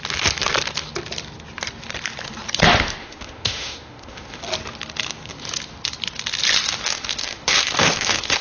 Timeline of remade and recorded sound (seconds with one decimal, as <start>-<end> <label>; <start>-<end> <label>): 0.0-3.0 recorded; 3.0-4.4 remade; 4.4-6.8 recorded; 6.8-8.4 remade